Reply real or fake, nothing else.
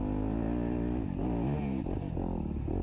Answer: real